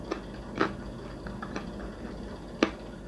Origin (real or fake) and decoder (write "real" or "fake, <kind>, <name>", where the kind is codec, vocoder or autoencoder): real